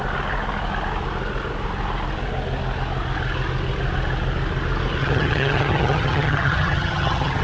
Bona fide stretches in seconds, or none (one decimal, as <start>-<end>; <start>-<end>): 0.0-5.0